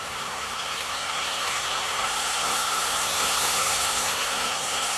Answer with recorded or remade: remade